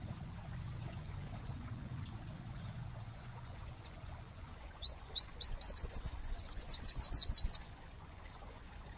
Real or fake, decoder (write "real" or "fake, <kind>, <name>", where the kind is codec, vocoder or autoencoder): fake, vocoder, Vocos